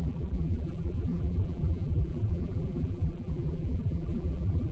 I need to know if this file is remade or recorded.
remade